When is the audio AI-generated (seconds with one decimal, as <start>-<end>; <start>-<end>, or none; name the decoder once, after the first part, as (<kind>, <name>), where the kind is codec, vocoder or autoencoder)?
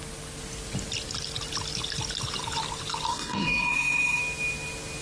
3.1-4.2 (codec, SNAC)